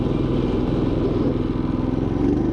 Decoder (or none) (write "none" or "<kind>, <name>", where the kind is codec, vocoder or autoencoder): none